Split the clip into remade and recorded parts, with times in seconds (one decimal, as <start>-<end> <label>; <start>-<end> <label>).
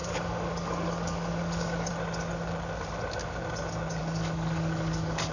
0.0-1.9 remade; 1.9-4.0 recorded; 4.0-5.3 remade